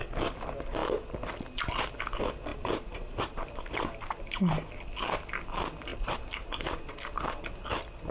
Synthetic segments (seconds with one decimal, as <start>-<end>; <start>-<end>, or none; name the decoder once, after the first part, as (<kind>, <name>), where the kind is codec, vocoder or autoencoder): 2.5-4.4 (vocoder, BigVGAN v2); 5.9-7.4

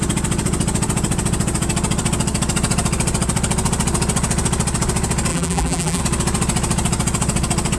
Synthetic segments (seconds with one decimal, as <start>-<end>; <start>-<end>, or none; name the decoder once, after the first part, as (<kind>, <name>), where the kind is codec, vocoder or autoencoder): 5.3-6.0 (vocoder, BigVGAN v2)

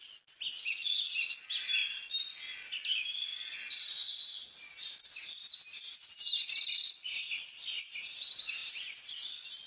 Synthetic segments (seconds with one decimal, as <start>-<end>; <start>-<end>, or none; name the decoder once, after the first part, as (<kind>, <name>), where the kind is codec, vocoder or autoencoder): none

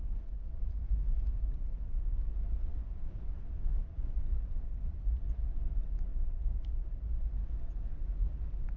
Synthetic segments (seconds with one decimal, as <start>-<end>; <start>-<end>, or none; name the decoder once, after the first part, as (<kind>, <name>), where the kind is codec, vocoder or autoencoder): 1.7-2.5 (vocoder, BigVGAN v2); 3.7-4.6; 6.1-6.9

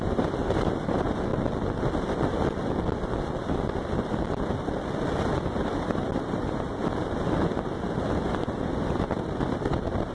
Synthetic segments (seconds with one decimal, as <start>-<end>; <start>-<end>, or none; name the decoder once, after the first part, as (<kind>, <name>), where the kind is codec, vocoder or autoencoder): 0.0-1.3 (vocoder, BigVGAN v2); 5.6-6.8; 8.3-10.1

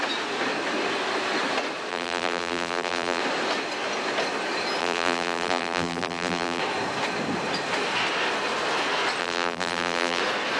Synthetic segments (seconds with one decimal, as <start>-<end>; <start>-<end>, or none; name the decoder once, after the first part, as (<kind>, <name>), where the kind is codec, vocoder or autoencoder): 1.9-3.2 (vocoder, BigVGAN v2); 4.8-6.6; 9.2-10.2